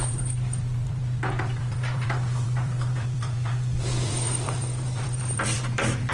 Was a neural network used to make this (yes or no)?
yes